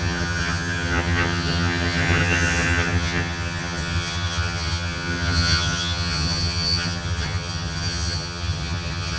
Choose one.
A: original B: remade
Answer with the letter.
B